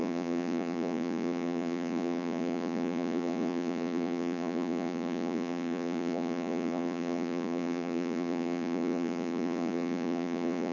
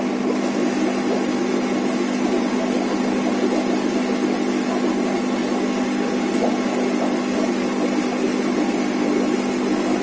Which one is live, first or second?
second